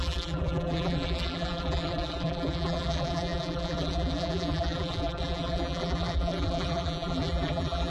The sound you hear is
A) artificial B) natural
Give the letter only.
A